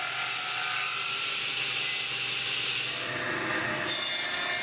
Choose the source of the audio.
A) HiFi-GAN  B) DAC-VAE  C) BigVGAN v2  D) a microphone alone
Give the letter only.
D